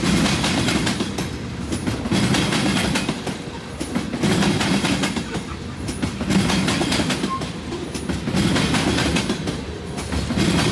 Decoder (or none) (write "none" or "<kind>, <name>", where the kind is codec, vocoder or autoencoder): none